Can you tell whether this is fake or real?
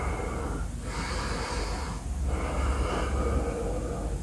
real